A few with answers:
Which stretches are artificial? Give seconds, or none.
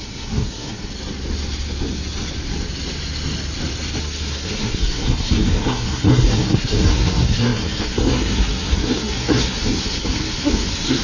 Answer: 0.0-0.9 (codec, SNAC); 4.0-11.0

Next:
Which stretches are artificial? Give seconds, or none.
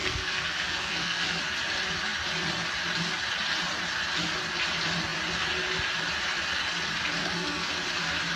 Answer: 0.0-1.4 (codec, SNAC); 7.2-7.7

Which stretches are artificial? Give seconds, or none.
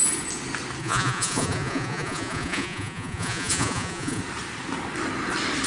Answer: 0.8-4.2 (vocoder, Vocos)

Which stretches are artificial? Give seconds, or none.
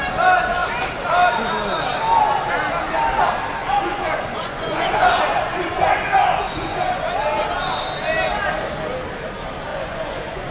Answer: 3.6-7.4 (vocoder, Vocos); 9.7-10.5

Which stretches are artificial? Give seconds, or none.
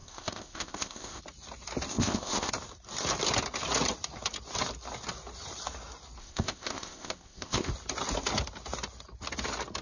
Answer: 0.0-1.2 (codec, ZipCodec); 1.9-2.5; 6.2-7.7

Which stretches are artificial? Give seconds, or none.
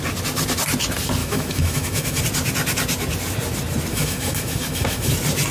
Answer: 1.2-2.2 (autoencoder, DAC-VAE); 3.9-5.1